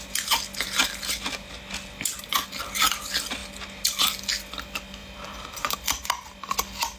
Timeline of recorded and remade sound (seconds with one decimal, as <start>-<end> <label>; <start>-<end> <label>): 0.0-5.0 recorded; 5.0-5.8 remade; 5.8-7.0 recorded